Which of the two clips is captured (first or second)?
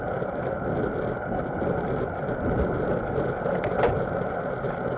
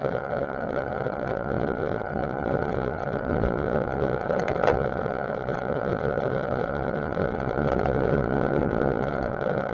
first